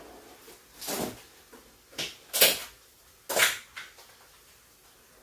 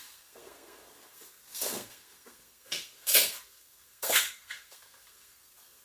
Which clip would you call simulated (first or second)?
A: second